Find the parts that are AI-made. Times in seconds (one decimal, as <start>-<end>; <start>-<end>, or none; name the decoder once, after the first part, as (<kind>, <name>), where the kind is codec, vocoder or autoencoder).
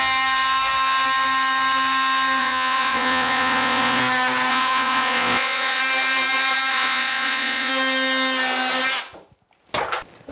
2.4-4.0 (vocoder, Vocos); 4.5-5.8; 6.7-7.7